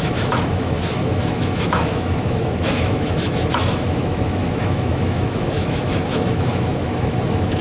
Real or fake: fake